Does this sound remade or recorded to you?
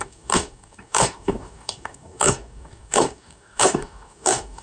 remade